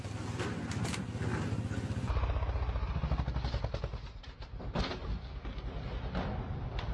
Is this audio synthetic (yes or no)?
no